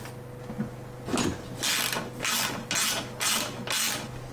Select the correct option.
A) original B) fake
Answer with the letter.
A